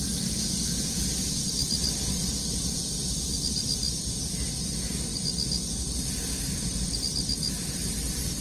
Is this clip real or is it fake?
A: real